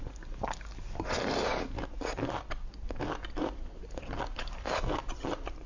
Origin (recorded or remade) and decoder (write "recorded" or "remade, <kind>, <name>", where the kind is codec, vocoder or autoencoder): recorded